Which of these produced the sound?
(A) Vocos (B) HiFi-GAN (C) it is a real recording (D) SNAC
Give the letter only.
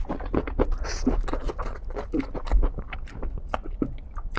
C